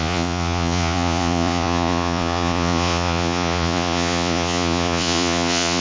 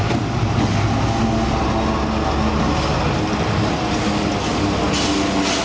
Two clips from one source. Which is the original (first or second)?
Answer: second